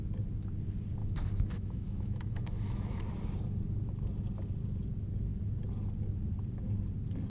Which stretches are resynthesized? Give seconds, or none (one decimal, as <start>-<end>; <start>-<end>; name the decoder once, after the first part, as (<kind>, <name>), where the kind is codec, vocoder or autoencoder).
1.0-3.0 (autoencoder, DAC-VAE)